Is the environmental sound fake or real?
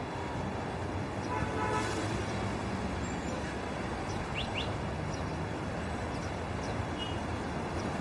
real